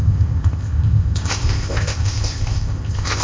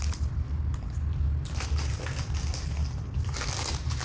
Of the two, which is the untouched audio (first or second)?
second